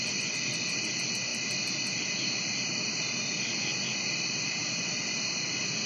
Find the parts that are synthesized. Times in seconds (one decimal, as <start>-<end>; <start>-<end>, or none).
none